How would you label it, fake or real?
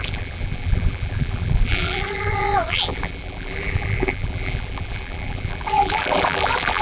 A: fake